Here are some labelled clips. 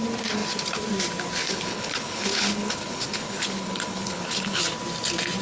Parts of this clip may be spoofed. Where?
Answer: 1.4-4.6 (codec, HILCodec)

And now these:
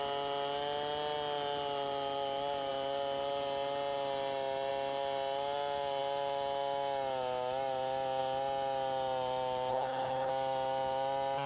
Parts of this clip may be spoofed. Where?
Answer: 9.7-10.3 (codec, HILCodec)

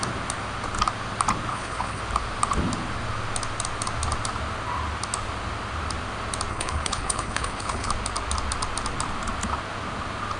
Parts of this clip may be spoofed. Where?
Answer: 1.5-2.0 (codec, HILCodec); 6.5-7.9

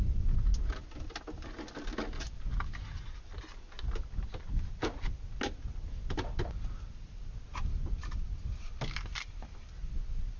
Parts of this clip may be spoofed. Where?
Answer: none

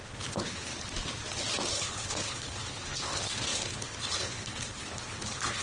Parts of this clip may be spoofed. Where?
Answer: 0.0-0.7 (codec, HILCodec); 1.7-5.6

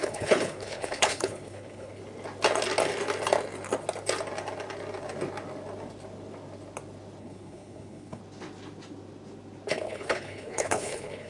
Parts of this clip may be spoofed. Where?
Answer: 0.0-2.0 (codec, HILCodec); 7.2-8.2; 9.7-11.3

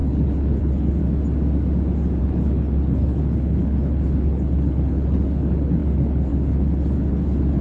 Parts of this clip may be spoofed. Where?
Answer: 0.0-1.0 (codec, HILCodec); 2.2-7.6

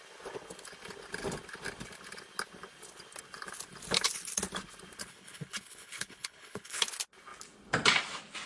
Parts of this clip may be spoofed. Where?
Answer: 5.0-6.8 (codec, HILCodec)